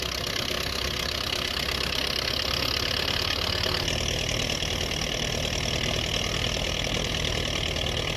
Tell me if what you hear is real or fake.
real